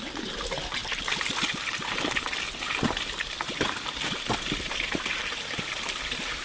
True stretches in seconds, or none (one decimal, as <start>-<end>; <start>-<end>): 0.8-4.6